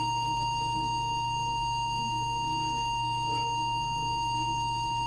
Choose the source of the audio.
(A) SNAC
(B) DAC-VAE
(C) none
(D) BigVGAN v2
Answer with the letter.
A